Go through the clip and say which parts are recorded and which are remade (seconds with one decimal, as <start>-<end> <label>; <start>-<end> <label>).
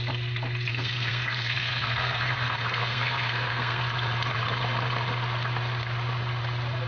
0.0-0.7 recorded; 0.7-3.8 remade; 3.8-6.9 recorded